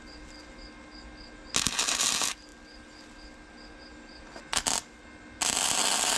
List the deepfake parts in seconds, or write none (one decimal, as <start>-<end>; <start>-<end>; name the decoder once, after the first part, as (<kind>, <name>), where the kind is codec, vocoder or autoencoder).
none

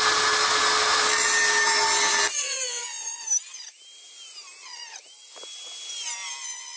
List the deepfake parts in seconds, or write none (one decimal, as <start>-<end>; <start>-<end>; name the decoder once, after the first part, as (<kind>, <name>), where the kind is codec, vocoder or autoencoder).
none

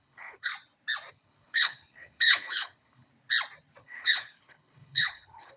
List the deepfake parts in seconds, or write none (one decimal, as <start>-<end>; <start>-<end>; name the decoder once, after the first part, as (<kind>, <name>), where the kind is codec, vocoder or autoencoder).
0.0-0.5 (codec, HILCodec); 1.1-3.1; 3.8-5.6

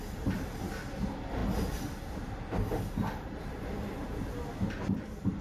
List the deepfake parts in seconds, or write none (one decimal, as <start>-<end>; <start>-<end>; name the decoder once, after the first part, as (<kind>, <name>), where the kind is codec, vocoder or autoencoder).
none

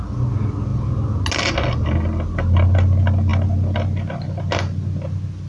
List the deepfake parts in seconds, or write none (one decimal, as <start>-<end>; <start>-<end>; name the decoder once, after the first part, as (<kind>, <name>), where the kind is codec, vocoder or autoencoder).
none

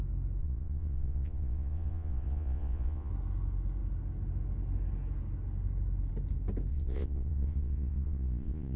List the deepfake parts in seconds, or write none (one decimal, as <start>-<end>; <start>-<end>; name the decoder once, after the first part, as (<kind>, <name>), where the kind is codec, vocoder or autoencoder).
0.4-3.1 (vocoder, Vocos); 6.7-8.8